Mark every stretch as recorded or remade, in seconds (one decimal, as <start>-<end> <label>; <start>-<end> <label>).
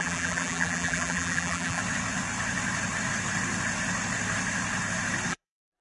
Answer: 0.0-1.8 remade; 1.8-5.3 recorded; 5.3-5.8 remade